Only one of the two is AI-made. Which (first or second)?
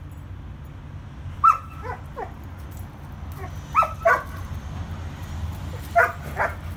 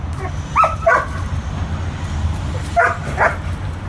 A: second